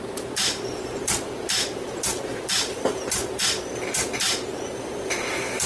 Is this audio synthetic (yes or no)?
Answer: yes